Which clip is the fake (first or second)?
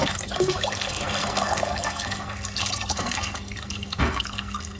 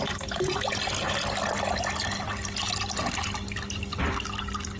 first